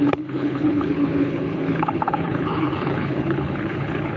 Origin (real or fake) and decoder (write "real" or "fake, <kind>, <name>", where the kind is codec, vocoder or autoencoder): fake, codec, HILCodec